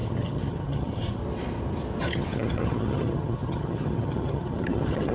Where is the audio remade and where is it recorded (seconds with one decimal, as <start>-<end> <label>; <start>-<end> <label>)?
0.0-1.2 remade; 1.2-2.0 recorded; 2.0-5.1 remade